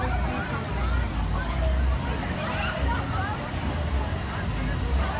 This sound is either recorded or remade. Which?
recorded